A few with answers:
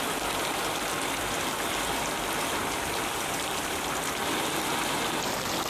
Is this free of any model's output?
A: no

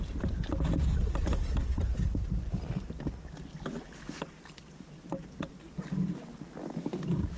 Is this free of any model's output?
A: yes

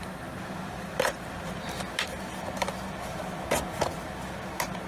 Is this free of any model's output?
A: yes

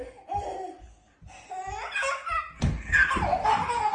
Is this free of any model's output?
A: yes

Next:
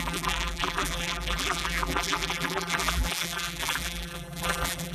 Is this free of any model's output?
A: no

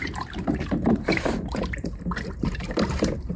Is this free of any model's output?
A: no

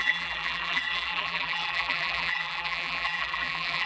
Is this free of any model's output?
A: no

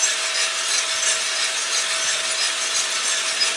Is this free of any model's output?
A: yes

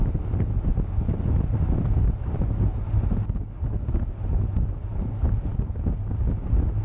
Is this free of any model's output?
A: yes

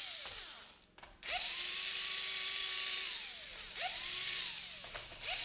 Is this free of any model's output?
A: no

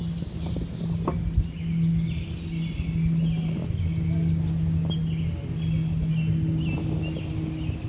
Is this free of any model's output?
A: yes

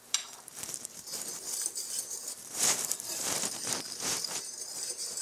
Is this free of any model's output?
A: no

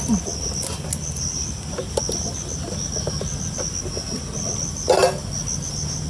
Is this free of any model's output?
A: yes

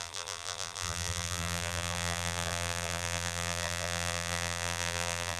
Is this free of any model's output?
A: no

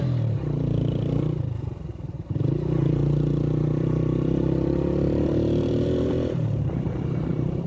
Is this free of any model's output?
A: no